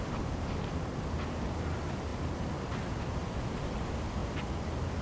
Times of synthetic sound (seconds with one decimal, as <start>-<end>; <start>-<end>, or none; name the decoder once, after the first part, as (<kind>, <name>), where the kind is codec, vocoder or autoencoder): none